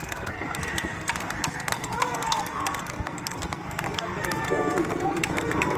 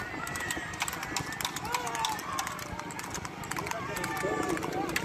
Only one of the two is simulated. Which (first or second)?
first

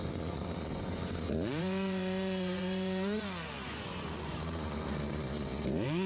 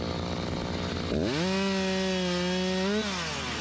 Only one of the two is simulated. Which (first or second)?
first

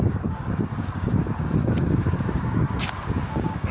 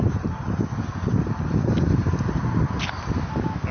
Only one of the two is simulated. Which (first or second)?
first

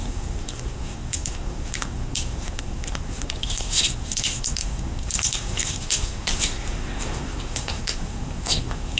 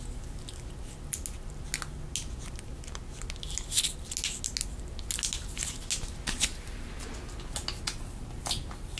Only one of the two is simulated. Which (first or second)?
first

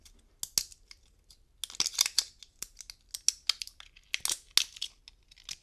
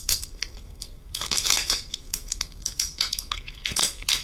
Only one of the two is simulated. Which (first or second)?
second